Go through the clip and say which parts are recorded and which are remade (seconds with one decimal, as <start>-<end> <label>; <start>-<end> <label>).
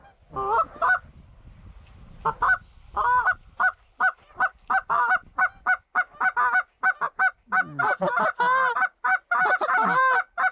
0.0-10.5 recorded